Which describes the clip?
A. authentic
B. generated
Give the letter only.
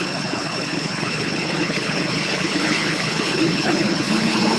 B